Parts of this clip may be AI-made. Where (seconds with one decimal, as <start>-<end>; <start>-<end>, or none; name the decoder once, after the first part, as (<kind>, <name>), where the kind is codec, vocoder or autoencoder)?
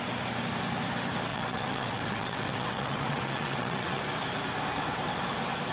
1.3-4.0 (vocoder, WaveNeXt)